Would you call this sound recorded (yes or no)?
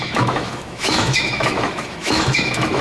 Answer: no